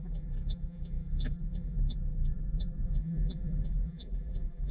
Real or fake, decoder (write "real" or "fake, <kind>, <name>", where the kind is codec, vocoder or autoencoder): fake, vocoder, BigVGAN v2